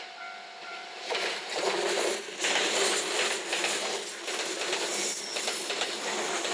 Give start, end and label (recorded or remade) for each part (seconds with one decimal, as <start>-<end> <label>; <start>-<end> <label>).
0.0-0.7 recorded; 0.7-1.8 remade; 1.8-6.5 recorded